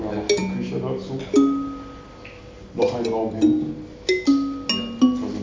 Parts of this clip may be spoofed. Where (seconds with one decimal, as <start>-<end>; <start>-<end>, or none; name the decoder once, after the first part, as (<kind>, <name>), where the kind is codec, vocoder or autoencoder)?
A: none